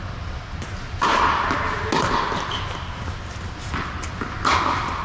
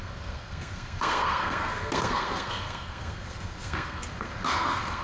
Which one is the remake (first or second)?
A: second